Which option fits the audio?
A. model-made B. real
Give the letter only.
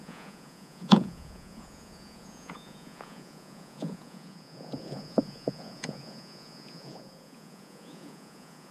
A